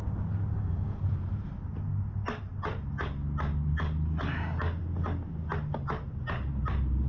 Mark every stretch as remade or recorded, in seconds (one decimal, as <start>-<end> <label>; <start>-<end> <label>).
0.0-0.5 recorded; 0.5-1.0 remade; 1.0-7.1 recorded